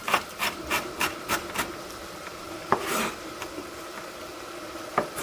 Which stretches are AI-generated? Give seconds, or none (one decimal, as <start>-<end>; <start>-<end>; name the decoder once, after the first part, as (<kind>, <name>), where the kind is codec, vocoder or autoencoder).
0.0-2.9 (vocoder, BigVGAN v2)